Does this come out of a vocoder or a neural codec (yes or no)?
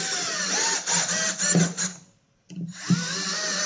no